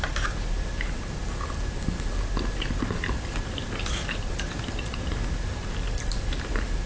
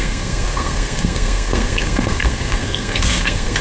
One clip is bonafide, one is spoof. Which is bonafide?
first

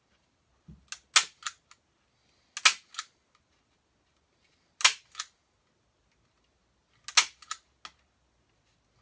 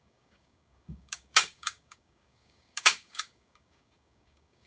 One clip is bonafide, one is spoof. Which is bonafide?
first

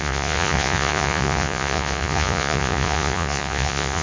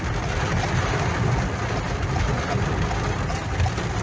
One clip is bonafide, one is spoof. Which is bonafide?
second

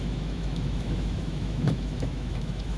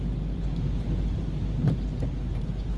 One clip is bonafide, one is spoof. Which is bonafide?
second